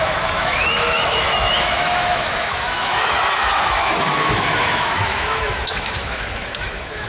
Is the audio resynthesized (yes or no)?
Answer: yes